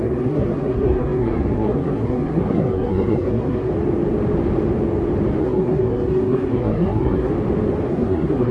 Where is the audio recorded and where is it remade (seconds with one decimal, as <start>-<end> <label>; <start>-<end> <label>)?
0.0-3.7 remade; 3.7-5.4 recorded; 5.4-7.3 remade; 7.3-7.9 recorded; 7.9-8.5 remade